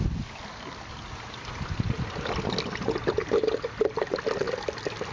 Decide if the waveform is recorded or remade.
recorded